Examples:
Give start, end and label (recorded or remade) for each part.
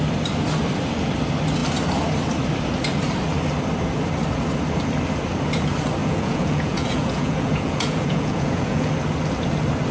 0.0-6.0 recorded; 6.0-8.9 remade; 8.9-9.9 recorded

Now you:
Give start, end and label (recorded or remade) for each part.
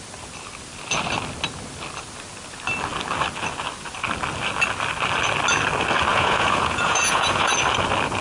0.0-6.1 recorded; 6.1-7.5 remade; 7.5-8.2 recorded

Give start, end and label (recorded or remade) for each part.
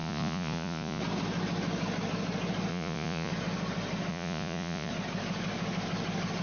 0.0-1.0 remade; 1.0-2.7 recorded; 2.7-3.3 remade; 3.3-4.1 recorded; 4.1-4.9 remade; 4.9-6.4 recorded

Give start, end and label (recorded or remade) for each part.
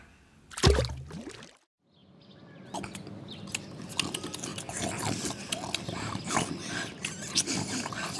0.0-8.2 recorded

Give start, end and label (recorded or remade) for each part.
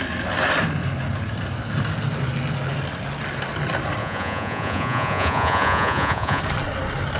0.0-4.0 recorded; 4.0-6.4 remade; 6.4-7.2 recorded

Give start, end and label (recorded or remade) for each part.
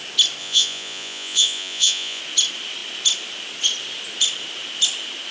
0.0-0.4 recorded; 0.4-2.2 remade; 2.2-5.3 recorded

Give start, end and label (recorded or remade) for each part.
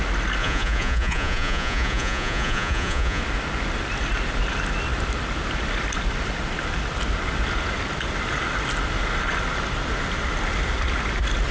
0.0-0.4 recorded; 0.4-3.2 remade; 3.2-11.5 recorded